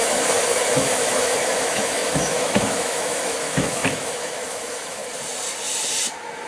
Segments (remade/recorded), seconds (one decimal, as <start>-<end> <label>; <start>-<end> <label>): 0.0-5.0 remade; 5.0-6.5 recorded